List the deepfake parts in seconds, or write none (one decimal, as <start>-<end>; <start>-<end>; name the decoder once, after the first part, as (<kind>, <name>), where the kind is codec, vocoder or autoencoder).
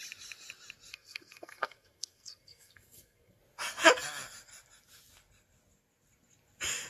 0.9-3.4 (codec, SNAC)